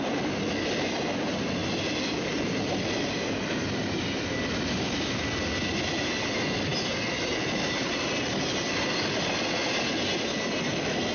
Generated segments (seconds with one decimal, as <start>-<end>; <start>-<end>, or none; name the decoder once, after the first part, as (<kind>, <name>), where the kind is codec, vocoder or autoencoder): none